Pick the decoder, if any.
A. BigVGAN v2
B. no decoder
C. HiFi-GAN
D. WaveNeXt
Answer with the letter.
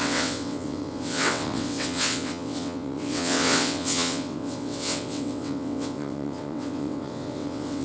D